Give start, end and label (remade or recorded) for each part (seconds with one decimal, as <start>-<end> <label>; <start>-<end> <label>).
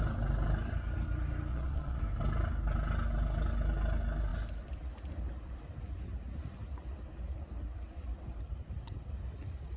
0.0-1.5 recorded; 1.5-2.0 remade; 2.0-9.8 recorded